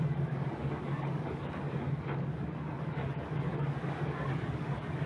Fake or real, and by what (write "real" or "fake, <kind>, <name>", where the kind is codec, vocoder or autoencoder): fake, codec, DAC